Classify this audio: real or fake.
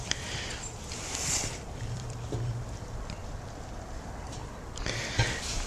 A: fake